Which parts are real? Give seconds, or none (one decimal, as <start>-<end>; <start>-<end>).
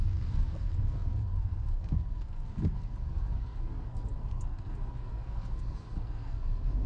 none